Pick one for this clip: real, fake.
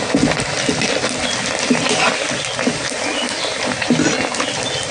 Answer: real